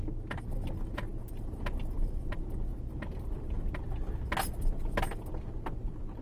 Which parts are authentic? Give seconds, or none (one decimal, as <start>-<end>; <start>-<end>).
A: 0.0-2.7; 4.3-6.2